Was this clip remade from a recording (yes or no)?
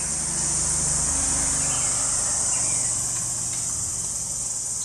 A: no